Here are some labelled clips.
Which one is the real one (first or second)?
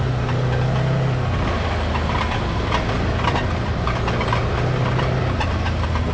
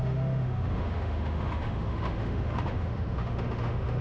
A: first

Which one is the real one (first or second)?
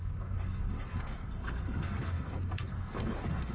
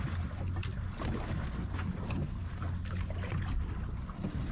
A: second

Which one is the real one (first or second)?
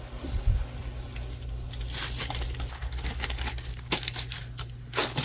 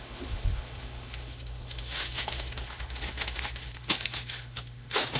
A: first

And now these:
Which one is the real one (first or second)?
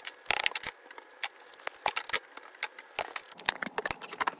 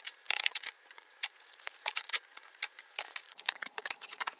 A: first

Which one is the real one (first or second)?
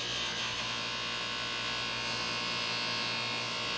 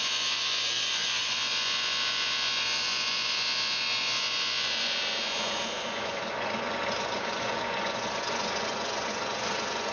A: first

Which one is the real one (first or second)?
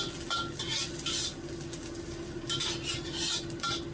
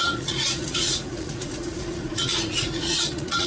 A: first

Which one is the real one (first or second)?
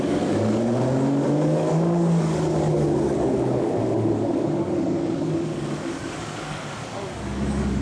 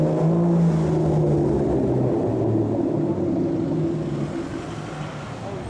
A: second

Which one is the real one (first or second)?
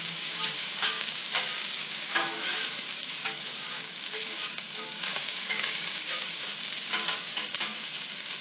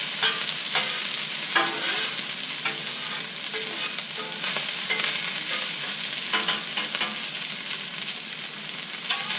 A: second